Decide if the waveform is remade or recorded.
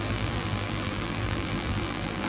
remade